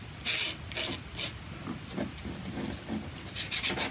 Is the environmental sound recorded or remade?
recorded